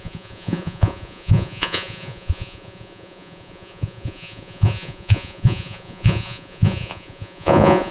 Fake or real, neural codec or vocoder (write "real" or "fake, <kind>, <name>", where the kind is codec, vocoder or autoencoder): fake, vocoder, Vocos